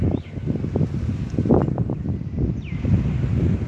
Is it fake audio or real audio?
real